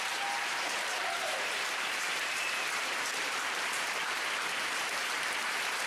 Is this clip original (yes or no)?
no